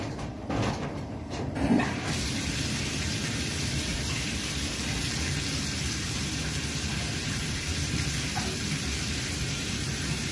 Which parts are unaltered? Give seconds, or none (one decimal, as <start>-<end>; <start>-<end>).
3.9-4.5